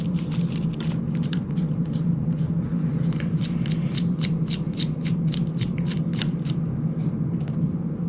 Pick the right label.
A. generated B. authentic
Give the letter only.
A